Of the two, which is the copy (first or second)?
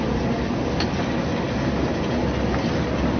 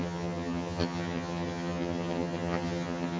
second